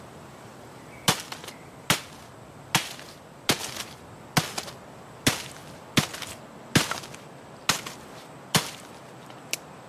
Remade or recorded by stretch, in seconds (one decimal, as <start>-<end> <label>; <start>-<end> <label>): 0.0-9.9 recorded